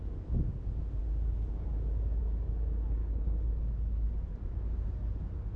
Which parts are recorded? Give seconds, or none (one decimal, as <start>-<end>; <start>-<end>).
0.0-3.0; 4.1-5.6